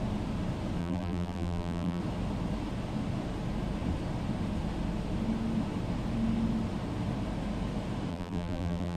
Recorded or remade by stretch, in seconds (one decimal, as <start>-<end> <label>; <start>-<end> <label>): 0.0-0.8 recorded; 0.8-2.0 remade; 2.0-8.1 recorded; 8.1-9.0 remade